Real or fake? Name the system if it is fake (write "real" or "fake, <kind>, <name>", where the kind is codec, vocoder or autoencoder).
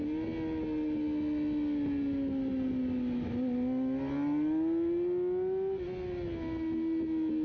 real